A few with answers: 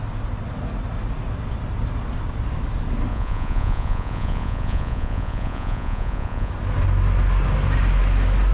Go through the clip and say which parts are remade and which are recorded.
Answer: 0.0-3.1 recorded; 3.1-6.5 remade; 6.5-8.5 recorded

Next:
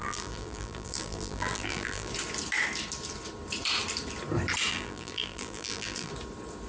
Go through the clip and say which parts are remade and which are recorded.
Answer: 0.0-2.1 remade; 2.1-4.7 recorded; 4.7-6.1 remade; 6.1-6.7 recorded

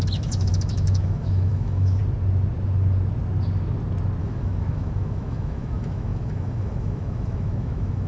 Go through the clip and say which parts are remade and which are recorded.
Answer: 0.0-2.0 remade; 2.0-4.2 recorded; 4.2-8.1 remade